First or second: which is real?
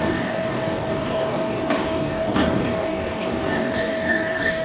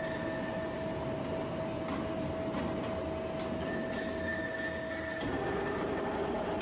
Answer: second